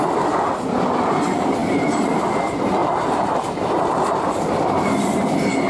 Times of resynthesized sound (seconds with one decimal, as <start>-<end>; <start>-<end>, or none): 1.6-2.2; 2.8-3.8